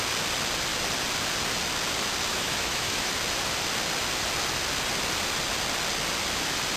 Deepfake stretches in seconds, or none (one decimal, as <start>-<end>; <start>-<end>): 2.3-3.1